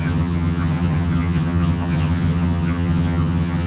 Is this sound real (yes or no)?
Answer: no